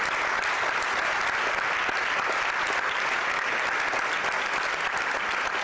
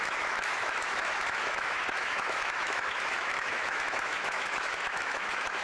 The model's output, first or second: second